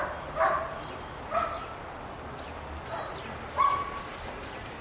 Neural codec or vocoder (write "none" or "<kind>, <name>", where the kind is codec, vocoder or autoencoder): none